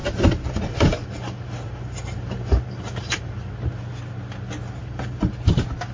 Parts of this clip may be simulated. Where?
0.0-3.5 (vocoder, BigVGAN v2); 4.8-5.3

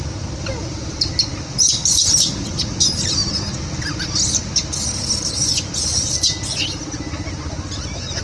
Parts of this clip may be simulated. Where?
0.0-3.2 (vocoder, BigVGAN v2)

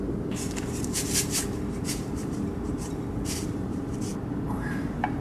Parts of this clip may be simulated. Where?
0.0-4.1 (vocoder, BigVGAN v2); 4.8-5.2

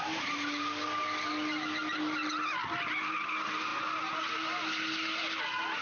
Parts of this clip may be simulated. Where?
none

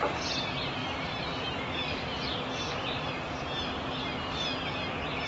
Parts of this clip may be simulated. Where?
none

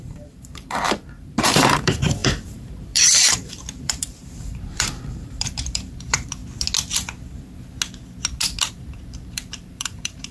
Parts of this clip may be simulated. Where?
0.0-6.4 (vocoder, BigVGAN v2); 8.7-10.3

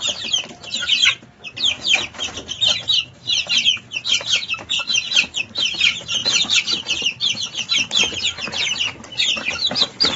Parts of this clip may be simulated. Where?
6.2-9.2 (vocoder, BigVGAN v2)